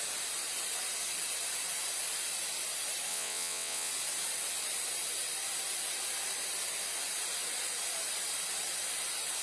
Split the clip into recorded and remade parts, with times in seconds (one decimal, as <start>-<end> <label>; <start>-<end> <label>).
0.0-3.1 recorded; 3.1-3.9 remade; 3.9-9.4 recorded